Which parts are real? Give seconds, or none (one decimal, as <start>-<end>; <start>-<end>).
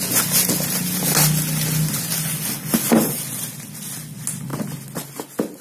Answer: 0.0-5.6